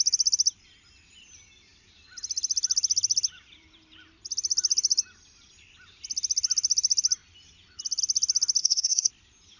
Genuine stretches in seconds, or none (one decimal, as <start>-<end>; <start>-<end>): 0.0-8.6; 9.1-9.6